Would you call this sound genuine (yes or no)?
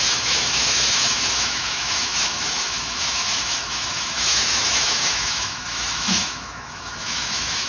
no